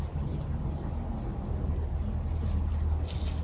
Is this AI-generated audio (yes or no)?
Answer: no